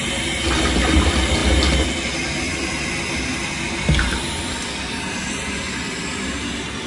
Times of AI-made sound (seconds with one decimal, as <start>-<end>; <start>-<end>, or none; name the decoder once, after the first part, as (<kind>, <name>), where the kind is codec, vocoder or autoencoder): none